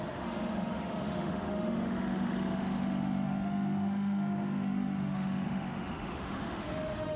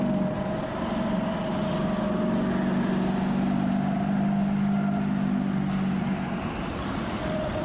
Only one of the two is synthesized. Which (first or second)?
first